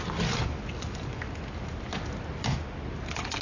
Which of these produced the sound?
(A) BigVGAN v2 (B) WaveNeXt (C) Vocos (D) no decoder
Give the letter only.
D